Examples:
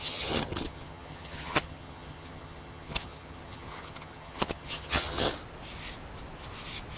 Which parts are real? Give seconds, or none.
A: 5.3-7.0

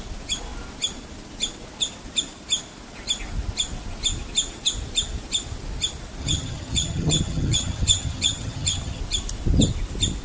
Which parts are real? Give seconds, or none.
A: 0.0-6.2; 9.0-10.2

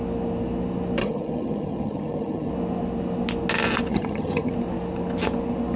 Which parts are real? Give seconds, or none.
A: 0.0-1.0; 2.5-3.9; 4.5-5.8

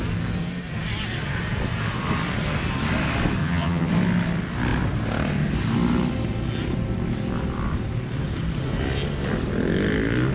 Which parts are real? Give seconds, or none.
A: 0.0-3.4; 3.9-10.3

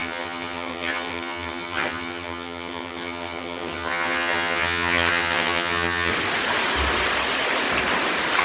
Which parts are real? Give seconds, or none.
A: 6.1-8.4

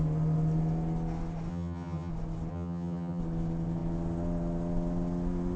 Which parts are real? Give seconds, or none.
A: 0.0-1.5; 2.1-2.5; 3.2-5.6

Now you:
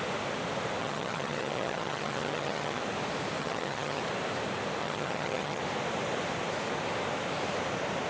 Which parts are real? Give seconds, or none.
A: 0.0-0.8; 2.8-3.4; 4.0-4.8; 5.6-8.1